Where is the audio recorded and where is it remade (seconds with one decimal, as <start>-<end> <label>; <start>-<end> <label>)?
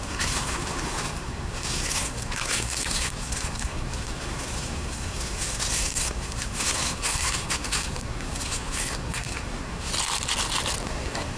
0.0-9.9 remade; 9.9-10.8 recorded; 10.8-11.4 remade